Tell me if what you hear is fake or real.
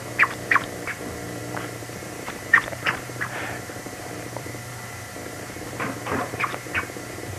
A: fake